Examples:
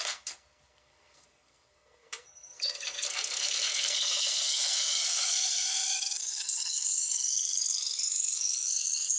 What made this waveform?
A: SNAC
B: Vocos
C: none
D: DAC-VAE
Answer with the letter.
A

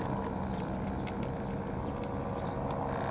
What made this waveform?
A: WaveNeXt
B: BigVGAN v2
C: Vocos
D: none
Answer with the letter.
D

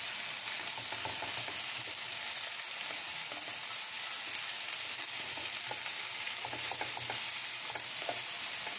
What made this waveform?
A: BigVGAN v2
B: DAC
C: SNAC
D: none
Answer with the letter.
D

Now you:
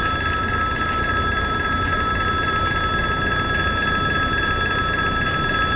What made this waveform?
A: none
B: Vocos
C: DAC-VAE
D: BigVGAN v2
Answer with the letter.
A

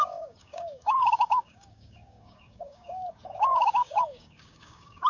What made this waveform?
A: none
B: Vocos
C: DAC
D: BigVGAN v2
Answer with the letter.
C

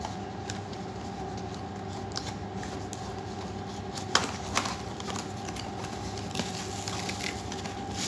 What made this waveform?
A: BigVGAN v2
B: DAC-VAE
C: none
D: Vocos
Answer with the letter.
C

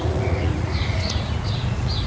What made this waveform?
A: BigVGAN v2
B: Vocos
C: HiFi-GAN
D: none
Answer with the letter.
B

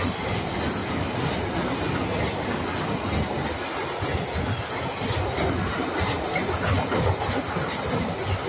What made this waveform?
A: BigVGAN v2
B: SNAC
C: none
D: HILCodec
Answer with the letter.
C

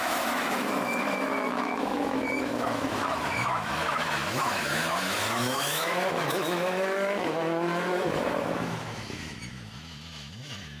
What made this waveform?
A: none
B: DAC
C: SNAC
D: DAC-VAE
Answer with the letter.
D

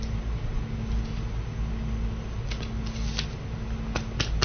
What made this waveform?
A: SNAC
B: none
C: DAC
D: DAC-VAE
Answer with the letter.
B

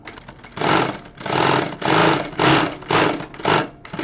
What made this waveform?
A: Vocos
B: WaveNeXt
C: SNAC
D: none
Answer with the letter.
D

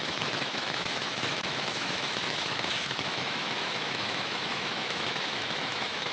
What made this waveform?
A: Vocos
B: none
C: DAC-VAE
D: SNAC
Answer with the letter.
C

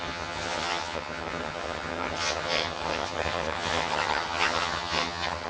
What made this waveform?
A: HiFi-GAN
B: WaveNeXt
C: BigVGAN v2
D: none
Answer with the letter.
A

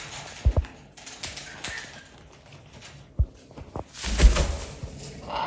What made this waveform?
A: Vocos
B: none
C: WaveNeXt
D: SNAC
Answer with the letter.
B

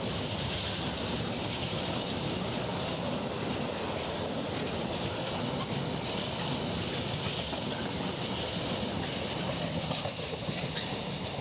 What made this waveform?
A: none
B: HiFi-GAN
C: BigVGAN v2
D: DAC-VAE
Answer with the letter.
A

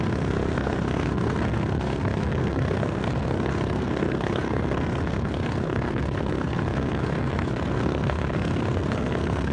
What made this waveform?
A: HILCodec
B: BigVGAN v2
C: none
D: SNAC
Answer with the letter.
D